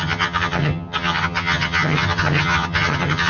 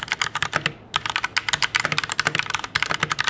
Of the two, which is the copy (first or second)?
first